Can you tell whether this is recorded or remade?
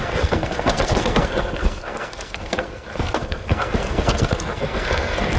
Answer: remade